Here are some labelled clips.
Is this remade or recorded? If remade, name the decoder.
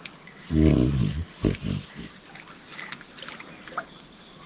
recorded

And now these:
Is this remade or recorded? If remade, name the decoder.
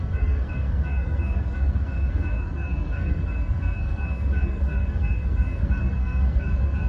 remade, codec, SNAC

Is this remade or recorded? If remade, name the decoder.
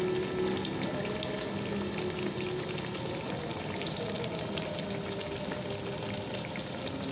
recorded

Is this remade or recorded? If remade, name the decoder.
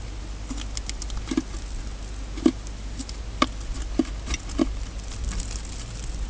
recorded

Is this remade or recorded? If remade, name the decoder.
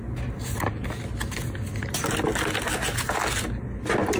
recorded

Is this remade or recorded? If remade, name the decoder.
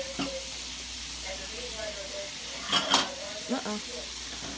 recorded